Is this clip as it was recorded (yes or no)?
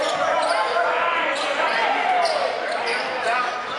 yes